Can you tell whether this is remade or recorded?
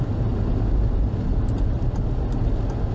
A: recorded